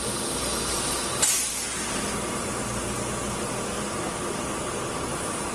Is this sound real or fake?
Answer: real